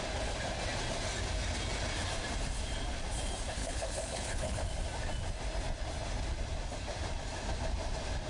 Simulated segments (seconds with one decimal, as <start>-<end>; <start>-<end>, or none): 3.6-4.7